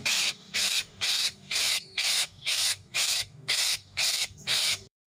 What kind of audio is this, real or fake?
fake